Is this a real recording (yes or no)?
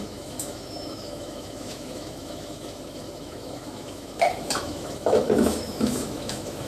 no